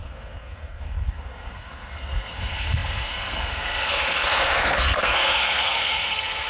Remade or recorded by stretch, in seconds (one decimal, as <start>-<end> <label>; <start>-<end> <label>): 0.0-6.5 remade